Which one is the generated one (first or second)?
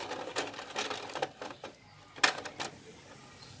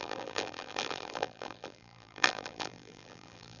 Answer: second